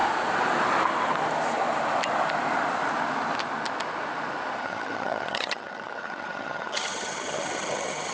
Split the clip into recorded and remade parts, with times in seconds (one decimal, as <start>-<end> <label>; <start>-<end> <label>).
0.0-4.6 recorded; 4.6-8.1 remade